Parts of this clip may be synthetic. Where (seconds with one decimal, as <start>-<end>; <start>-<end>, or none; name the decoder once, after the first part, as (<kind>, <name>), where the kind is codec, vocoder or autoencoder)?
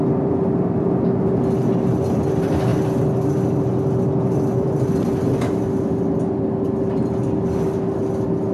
none